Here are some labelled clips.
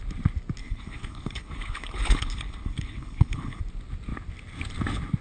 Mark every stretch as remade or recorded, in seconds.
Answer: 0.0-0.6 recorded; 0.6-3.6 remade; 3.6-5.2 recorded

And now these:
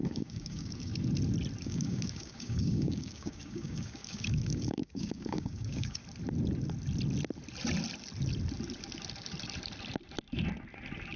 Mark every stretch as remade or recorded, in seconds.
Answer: 0.0-0.9 remade; 0.9-1.6 recorded; 1.6-6.0 remade; 6.0-11.2 recorded

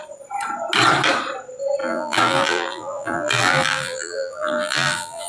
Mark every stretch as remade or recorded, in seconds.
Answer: 0.0-1.8 recorded; 1.8-5.3 remade

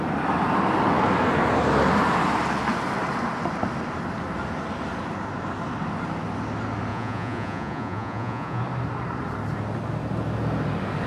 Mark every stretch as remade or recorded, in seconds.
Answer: 0.0-6.9 recorded; 6.9-8.6 remade; 8.6-11.1 recorded

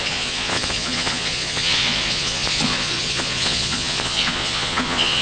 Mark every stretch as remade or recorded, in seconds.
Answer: 0.0-5.2 remade